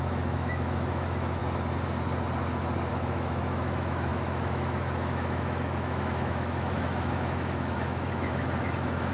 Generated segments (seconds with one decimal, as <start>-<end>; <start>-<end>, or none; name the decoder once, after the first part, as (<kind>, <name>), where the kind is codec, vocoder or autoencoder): 0.0-1.4 (autoencoder, DAC-VAE); 2.9-9.1